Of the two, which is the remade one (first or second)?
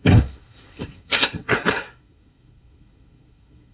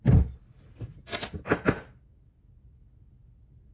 first